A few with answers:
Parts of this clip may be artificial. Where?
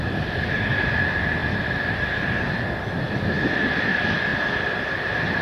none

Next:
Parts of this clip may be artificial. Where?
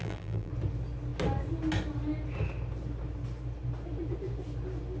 0.0-0.5 (vocoder, BigVGAN v2)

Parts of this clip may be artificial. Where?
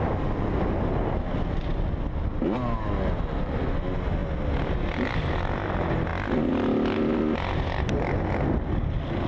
none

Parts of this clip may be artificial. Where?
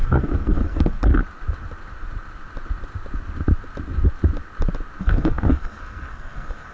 0.0-1.0 (codec, SNAC); 5.0-6.7